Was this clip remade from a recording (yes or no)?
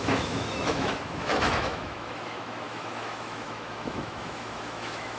yes